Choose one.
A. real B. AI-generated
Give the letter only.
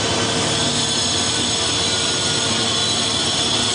A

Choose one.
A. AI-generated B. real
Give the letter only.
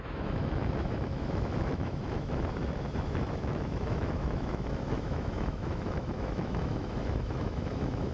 A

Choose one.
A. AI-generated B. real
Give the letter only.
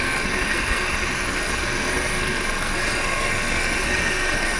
A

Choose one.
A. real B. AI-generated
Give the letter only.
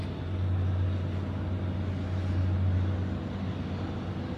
A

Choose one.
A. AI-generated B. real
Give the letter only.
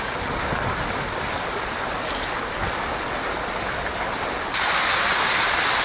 B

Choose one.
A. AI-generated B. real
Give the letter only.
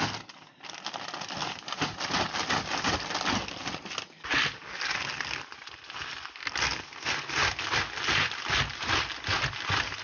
B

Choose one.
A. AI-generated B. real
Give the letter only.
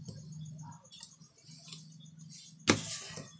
B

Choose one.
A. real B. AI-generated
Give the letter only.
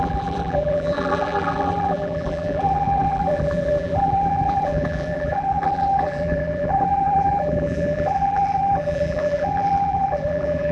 B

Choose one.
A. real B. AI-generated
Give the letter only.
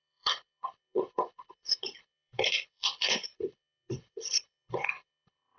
B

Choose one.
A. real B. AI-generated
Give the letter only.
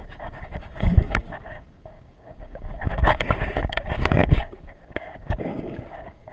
B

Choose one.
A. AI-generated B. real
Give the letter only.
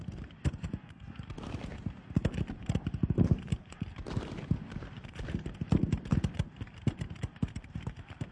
A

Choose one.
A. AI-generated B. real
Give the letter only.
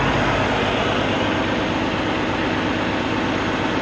B